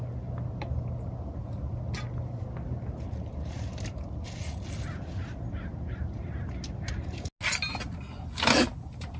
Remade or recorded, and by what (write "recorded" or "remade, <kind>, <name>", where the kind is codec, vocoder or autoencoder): recorded